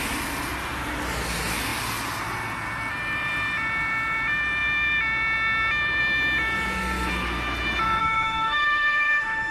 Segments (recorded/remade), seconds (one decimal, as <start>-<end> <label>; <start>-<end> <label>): 0.0-8.0 recorded; 8.0-9.5 remade